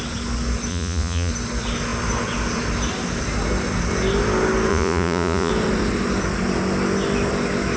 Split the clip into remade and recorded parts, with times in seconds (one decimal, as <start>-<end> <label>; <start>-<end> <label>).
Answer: 0.0-0.7 recorded; 0.7-1.3 remade; 1.3-4.7 recorded; 4.7-5.5 remade; 5.5-7.8 recorded